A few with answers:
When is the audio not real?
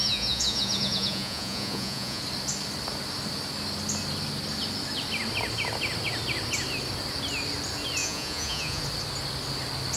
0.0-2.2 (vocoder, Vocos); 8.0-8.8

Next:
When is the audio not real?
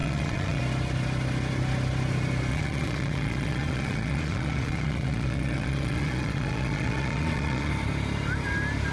0.0-0.6 (vocoder, Vocos); 2.5-7.7